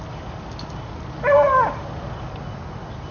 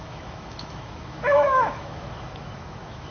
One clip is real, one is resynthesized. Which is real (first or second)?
first